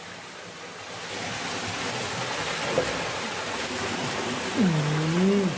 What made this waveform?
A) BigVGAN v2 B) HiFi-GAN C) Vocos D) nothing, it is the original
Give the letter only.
D